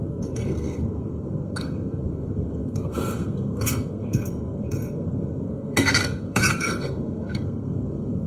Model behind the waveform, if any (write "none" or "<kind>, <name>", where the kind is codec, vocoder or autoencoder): codec, SNAC